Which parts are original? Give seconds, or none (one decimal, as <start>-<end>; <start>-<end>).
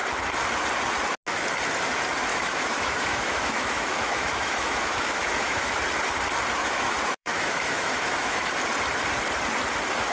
0.0-2.3; 5.7-6.6; 8.5-10.1